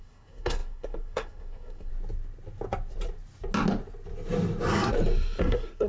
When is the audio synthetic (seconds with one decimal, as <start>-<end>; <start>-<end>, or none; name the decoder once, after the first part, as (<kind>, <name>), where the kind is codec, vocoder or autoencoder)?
0.0-1.9 (codec, SNAC); 5.4-5.9